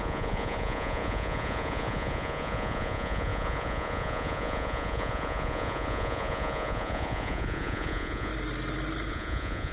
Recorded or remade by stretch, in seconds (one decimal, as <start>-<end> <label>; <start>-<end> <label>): 0.0-8.3 remade; 8.3-9.1 recorded; 9.1-9.7 remade